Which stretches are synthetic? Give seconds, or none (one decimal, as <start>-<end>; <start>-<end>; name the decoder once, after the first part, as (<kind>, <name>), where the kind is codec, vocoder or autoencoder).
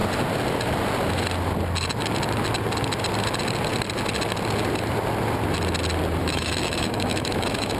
6.2-7.8 (autoencoder, DAC-VAE)